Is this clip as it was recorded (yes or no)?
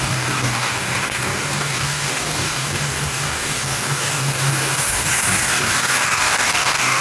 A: no